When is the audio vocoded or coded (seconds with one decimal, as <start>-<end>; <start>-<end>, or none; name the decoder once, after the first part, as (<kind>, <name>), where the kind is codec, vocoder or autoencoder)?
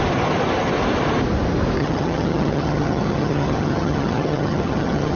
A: 1.8-5.2 (vocoder, HiFi-GAN)